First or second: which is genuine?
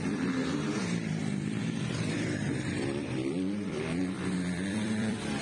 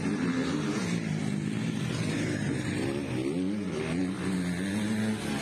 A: second